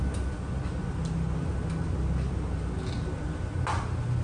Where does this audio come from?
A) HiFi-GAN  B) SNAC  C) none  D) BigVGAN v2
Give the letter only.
C